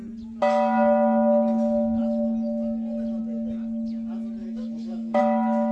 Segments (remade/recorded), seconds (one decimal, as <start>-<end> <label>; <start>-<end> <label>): 0.0-4.4 recorded; 4.4-5.2 remade; 5.2-5.7 recorded